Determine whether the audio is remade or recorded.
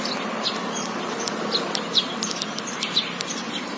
remade